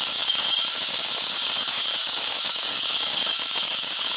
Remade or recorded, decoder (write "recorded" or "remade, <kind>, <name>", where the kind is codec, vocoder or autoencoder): remade, codec, DAC